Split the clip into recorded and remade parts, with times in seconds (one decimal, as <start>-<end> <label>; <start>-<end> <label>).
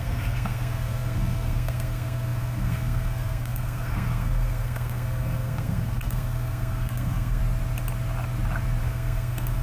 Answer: 0.0-7.4 remade; 7.4-8.8 recorded; 8.8-9.6 remade